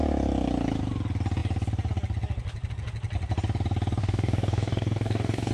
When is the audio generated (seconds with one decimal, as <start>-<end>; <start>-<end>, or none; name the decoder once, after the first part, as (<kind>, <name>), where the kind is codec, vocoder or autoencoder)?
4.0-5.5 (codec, DAC)